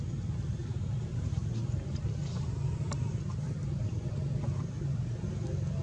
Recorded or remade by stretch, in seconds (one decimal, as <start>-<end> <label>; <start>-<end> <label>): 0.0-0.7 recorded; 0.7-4.0 remade; 4.0-5.8 recorded